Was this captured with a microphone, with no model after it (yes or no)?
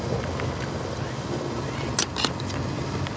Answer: yes